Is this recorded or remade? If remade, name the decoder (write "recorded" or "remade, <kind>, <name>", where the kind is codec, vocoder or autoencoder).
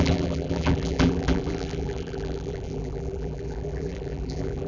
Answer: remade, vocoder, BigVGAN v2